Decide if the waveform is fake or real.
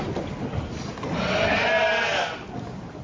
real